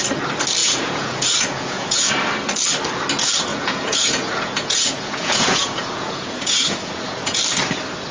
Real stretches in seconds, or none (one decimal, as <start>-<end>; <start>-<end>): 0.0-0.6; 2.1-3.5; 7.4-8.1